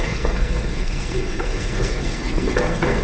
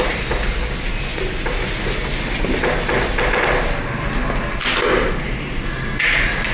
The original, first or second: second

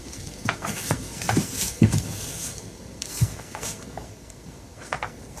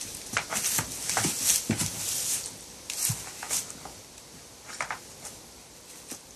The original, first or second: second